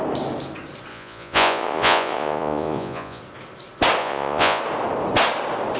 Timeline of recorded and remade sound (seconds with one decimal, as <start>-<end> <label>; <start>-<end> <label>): 0.0-0.9 recorded; 0.9-3.2 remade; 3.2-4.0 recorded; 4.0-4.6 remade; 4.6-5.8 recorded